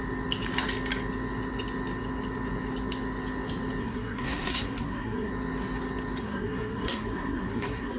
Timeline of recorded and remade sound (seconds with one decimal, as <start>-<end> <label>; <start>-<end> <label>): 0.0-3.8 recorded; 3.8-5.3 remade; 5.3-6.2 recorded; 6.2-8.0 remade